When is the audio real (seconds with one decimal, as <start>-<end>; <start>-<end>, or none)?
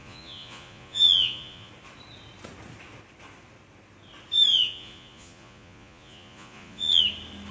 1.7-4.5; 7.0-7.5